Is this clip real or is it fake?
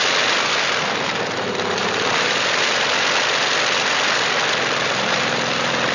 real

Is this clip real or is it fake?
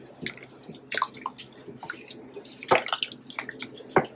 real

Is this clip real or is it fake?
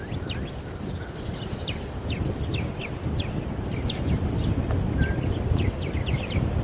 real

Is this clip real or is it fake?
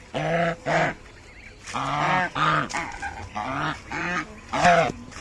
real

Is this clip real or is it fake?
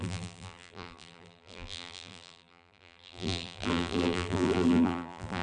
fake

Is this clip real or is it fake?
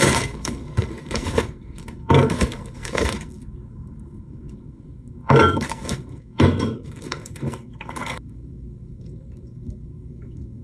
fake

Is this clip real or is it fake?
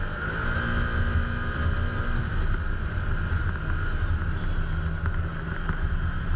real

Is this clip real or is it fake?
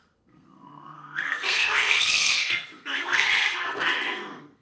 fake